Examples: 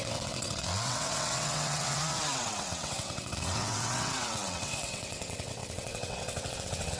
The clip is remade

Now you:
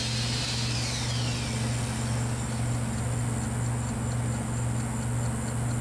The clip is recorded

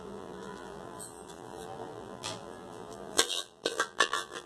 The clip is remade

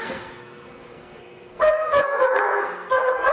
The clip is remade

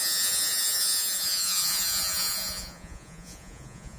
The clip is remade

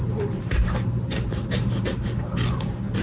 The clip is remade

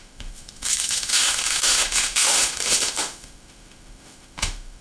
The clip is remade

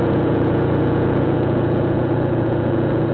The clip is remade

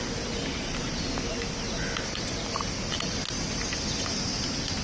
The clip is recorded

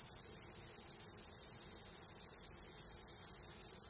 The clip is recorded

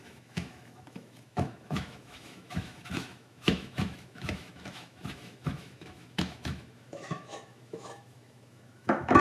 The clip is remade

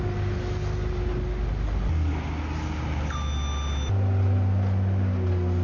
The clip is recorded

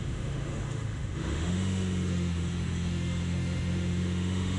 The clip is remade